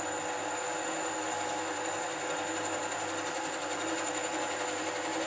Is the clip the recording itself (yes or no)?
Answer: yes